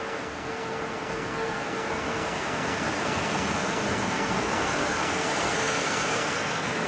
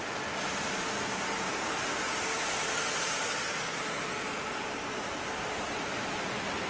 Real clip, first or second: second